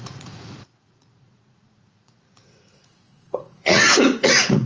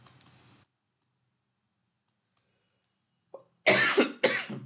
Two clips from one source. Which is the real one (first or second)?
second